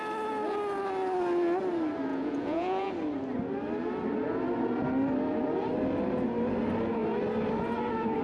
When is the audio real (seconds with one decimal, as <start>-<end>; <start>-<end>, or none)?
0.0-2.1; 2.9-8.2